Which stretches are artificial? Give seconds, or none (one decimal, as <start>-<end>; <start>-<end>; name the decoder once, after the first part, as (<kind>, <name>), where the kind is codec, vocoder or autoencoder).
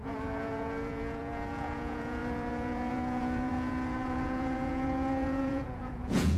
0.0-6.4 (vocoder, Vocos)